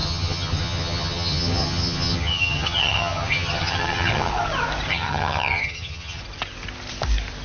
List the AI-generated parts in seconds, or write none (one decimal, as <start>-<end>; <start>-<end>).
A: 0.0-4.3; 4.9-6.2